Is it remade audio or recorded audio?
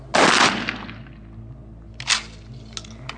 recorded